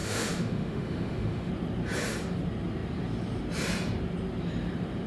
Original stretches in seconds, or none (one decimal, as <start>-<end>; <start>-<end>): 1.5-5.1